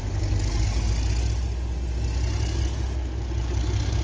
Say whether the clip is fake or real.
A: real